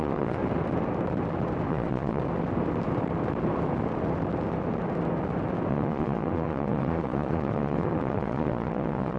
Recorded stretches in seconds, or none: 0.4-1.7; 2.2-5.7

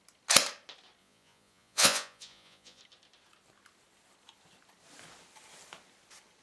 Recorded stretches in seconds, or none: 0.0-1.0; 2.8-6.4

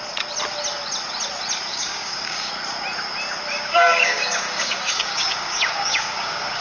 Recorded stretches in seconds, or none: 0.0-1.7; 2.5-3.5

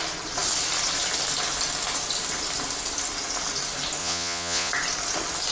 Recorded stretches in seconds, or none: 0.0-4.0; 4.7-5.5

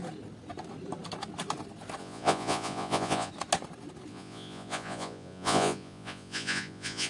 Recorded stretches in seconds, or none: 0.0-2.0; 3.3-4.1